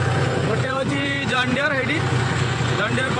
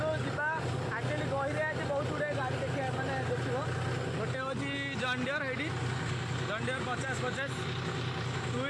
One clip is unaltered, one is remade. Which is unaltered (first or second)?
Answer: second